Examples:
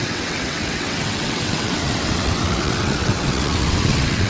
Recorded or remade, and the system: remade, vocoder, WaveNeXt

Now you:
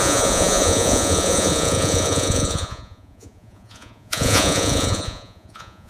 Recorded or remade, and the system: remade, vocoder, Vocos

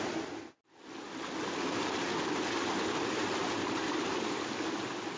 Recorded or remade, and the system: recorded